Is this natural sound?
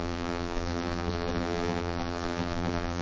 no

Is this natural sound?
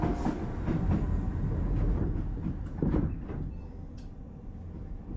yes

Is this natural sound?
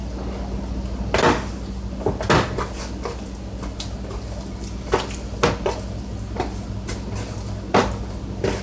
yes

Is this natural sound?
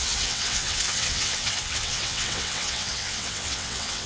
no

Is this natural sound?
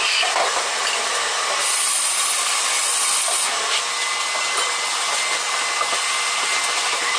yes